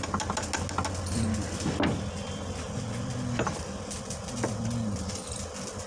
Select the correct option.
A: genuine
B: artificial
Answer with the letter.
A